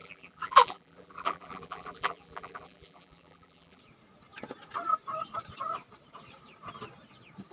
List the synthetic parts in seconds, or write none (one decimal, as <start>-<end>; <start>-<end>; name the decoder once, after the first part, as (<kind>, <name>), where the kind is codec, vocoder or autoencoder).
0.0-3.8 (vocoder, BigVGAN v2)